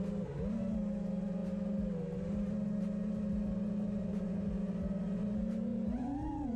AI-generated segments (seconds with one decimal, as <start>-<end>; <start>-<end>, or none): none

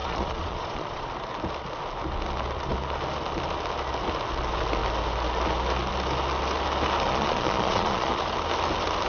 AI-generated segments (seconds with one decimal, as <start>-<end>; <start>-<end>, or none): 0.0-1.1; 7.1-8.2

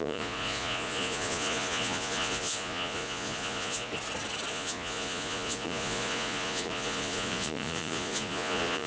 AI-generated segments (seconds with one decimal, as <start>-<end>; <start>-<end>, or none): 0.0-3.9; 4.5-8.9

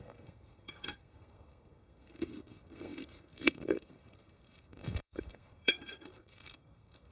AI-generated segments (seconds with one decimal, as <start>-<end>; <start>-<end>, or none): 0.0-7.1

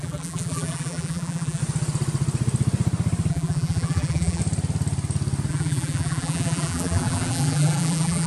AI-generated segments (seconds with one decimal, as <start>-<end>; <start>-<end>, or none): 0.0-1.6; 3.3-4.4; 5.5-8.3

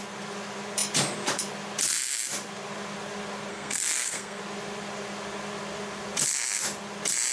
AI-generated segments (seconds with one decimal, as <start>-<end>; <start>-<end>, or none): 3.5-4.4

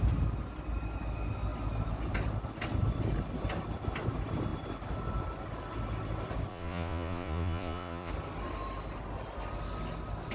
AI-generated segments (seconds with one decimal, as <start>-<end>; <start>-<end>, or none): 6.5-8.1